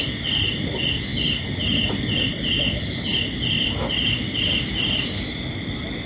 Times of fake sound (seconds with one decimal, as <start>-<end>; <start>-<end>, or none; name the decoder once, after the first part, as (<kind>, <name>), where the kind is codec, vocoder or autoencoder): 3.1-4.6 (vocoder, BigVGAN v2)